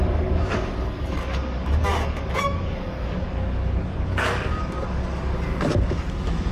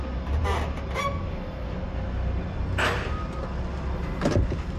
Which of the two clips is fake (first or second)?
first